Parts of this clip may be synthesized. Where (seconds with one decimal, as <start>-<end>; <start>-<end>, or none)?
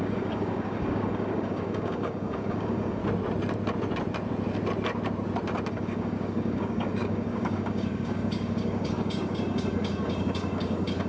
0.0-3.0; 5.7-11.1